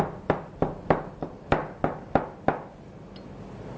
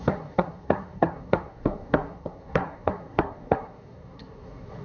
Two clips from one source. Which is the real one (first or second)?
first